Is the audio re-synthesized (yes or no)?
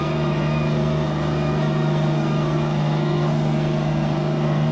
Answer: yes